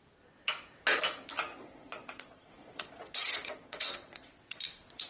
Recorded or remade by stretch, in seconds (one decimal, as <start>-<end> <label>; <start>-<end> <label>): 0.0-1.5 recorded; 1.5-4.6 remade; 4.6-5.1 recorded